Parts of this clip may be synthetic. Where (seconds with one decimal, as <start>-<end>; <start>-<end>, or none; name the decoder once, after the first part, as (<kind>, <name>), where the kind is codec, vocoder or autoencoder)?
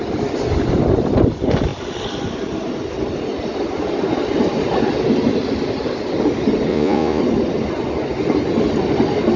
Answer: 6.7-7.2 (vocoder, Vocos)